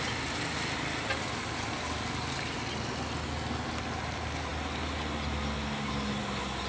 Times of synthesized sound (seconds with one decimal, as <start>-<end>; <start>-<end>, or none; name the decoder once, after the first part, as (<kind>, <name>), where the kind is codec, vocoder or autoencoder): none